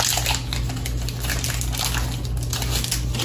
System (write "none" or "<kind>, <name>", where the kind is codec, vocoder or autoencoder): none